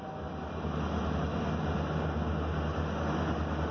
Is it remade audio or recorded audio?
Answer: recorded